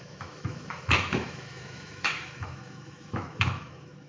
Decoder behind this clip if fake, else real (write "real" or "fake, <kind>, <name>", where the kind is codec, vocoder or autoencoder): fake, autoencoder, DAC-VAE